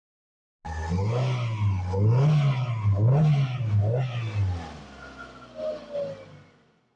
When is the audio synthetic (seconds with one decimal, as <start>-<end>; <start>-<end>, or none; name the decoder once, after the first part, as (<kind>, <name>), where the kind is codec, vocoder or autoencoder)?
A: none